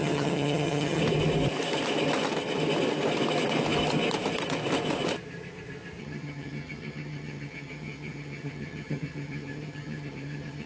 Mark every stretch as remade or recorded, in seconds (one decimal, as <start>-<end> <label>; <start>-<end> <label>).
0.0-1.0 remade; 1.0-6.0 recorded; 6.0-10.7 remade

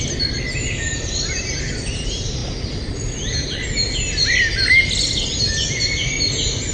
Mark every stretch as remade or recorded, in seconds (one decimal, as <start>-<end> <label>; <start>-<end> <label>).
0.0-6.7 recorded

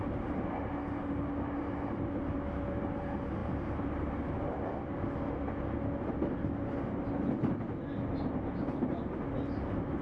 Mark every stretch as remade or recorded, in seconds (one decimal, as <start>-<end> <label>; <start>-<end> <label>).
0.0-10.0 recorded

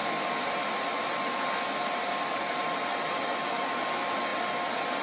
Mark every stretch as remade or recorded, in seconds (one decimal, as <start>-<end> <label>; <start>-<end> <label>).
0.0-5.0 recorded